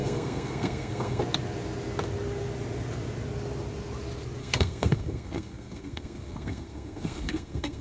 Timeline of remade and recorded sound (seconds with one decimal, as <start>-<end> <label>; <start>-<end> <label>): 0.0-1.2 remade; 1.2-4.4 recorded; 4.4-7.8 remade